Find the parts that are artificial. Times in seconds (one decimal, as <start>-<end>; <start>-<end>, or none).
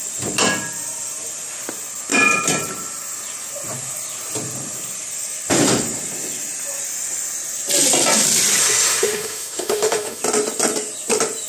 8.6-10.2